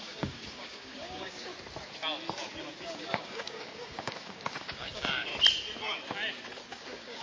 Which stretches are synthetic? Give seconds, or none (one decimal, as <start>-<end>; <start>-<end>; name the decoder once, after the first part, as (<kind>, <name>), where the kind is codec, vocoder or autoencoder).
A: 0.0-1.5 (codec, DAC); 2.8-5.3; 6.7-7.2